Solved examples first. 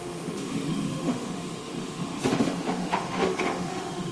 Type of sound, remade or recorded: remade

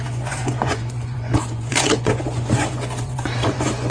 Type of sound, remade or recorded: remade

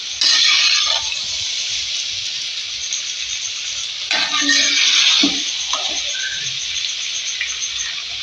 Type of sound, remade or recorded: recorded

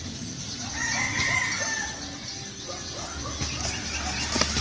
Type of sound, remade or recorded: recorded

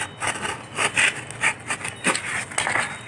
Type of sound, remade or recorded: recorded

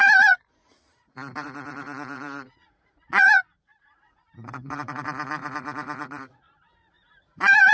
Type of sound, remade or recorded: remade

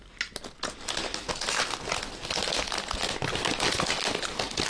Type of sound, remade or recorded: recorded